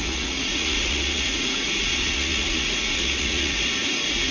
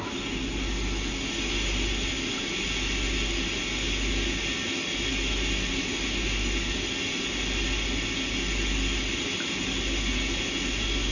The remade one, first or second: first